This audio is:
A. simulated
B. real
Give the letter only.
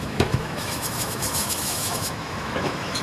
A